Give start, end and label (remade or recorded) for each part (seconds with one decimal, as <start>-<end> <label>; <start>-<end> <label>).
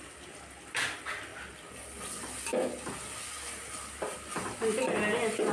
0.0-5.5 recorded